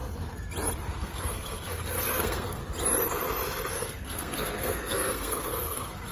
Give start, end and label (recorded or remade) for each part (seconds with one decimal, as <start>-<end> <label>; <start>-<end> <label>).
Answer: 0.0-0.8 recorded; 0.8-2.6 remade; 2.6-3.7 recorded; 3.7-6.1 remade